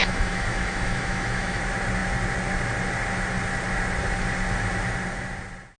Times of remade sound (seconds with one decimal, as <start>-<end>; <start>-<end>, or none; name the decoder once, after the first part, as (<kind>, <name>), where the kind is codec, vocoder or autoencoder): 0.0-1.6 (autoencoder, DAC-VAE)